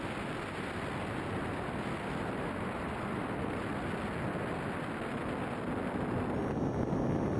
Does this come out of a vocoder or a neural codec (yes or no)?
no